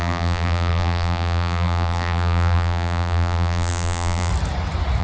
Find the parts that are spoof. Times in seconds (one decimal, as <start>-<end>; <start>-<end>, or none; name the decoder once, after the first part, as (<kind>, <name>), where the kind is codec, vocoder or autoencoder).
0.0-4.3 (vocoder, BigVGAN v2)